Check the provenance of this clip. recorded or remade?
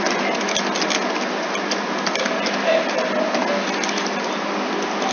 recorded